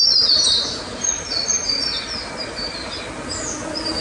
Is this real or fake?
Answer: real